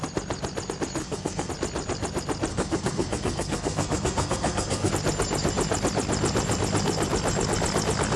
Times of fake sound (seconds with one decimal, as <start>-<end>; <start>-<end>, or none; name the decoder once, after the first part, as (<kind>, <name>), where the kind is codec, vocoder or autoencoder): 1.0-1.5 (codec, SNAC); 2.5-4.9